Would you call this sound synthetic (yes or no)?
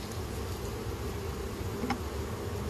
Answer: no